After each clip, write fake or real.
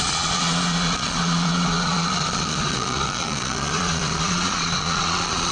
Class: fake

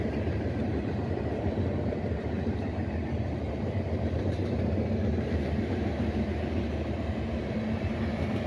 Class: fake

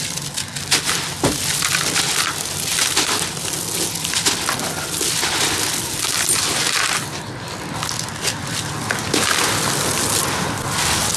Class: real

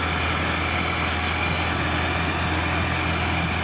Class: real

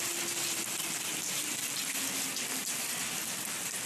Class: real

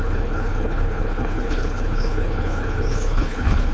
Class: fake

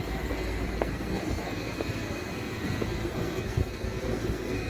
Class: fake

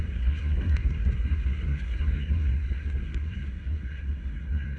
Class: fake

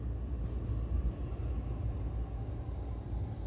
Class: real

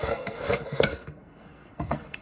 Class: fake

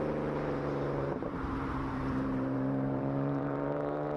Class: fake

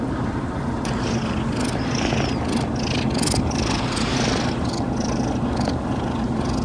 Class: real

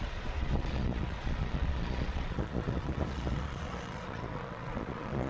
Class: fake